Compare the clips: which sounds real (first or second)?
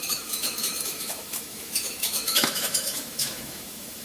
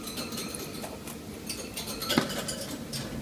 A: second